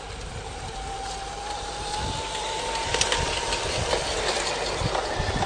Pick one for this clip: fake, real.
real